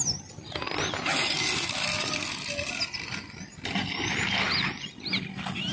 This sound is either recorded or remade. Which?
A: recorded